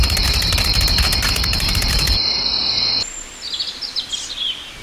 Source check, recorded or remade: recorded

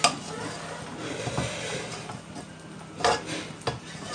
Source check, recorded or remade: recorded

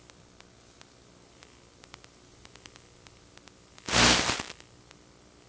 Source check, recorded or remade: recorded